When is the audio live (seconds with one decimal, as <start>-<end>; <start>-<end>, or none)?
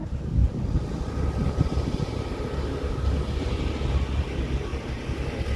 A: 0.4-1.1; 4.7-5.6